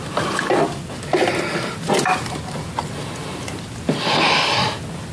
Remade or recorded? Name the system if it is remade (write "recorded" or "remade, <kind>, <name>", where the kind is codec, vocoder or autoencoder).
recorded